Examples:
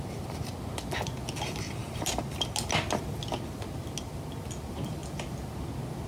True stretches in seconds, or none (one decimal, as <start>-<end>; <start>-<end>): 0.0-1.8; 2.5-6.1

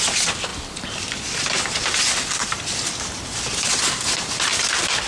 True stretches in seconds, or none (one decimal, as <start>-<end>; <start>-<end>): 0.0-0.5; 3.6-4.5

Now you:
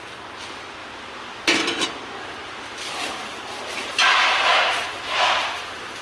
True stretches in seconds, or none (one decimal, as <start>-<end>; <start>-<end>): 0.0-2.4; 3.0-3.8

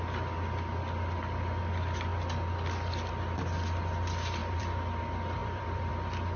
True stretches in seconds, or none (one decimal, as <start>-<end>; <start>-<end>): 0.0-4.4; 5.0-5.4; 5.9-6.4

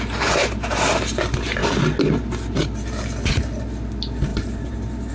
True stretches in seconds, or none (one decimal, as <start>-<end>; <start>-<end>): 0.0-4.3

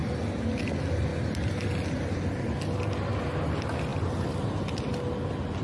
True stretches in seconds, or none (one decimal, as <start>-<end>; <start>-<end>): 0.0-5.6

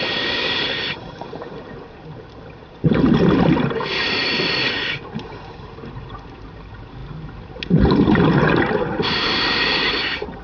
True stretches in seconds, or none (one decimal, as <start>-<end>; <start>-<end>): 0.0-10.4